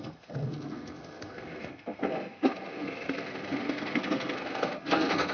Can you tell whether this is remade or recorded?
remade